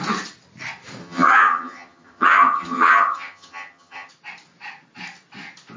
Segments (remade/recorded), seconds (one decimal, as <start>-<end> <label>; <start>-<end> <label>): 0.0-1.0 recorded; 1.0-4.1 remade; 4.1-5.8 recorded

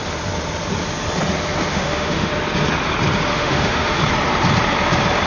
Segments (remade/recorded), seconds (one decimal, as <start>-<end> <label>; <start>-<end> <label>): 0.0-1.7 recorded; 1.7-2.3 remade; 2.3-3.3 recorded; 3.3-4.0 remade; 4.0-5.3 recorded

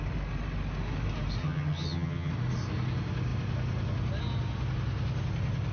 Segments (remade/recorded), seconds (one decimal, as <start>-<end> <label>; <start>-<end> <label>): 0.0-1.4 recorded; 1.4-2.3 remade; 2.3-5.7 recorded

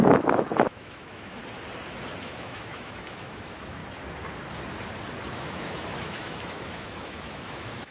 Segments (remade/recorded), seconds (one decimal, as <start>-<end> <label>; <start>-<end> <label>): 0.0-1.4 remade; 1.4-2.2 recorded; 2.2-3.8 remade; 3.8-5.3 recorded; 5.3-7.9 remade

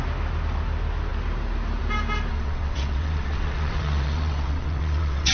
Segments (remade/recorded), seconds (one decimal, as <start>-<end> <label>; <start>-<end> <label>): 0.0-2.3 recorded; 2.3-5.3 remade

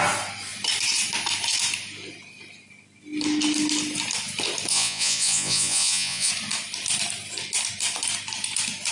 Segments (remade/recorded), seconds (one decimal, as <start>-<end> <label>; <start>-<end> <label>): 0.0-4.7 recorded; 4.7-6.3 remade; 6.3-8.9 recorded

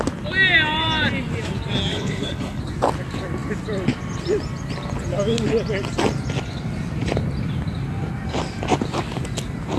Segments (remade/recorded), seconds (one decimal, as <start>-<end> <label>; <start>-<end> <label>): 0.0-1.9 recorded; 1.9-2.6 remade; 2.6-9.8 recorded

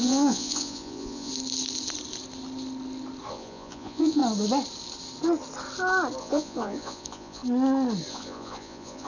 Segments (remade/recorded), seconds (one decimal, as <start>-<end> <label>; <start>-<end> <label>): 0.0-1.3 remade; 1.3-3.3 recorded; 3.3-4.2 remade; 4.2-6.2 recorded; 6.2-7.4 remade; 7.4-8.1 recorded; 8.1-9.1 remade